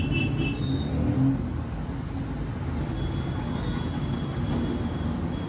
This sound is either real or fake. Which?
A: real